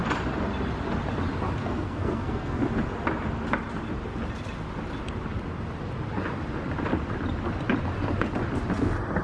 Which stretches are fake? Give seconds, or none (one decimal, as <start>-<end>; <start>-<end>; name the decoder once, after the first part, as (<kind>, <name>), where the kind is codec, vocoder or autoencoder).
1.6-2.6 (codec, SNAC)